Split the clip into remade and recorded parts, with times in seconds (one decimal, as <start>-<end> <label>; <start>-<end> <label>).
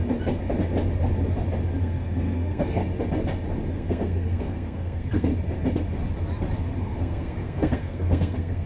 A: 0.0-1.8 recorded; 1.8-2.8 remade; 2.8-3.7 recorded; 3.7-5.3 remade; 5.3-6.8 recorded; 6.8-8.7 remade